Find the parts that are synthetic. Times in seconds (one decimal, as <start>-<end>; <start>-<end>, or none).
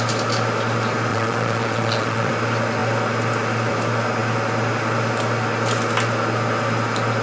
1.1-2.3